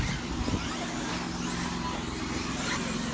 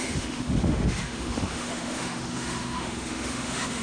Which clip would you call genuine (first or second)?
first